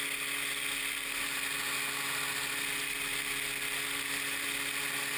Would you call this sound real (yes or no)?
yes